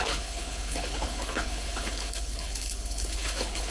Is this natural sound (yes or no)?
no